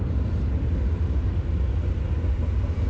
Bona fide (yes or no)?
no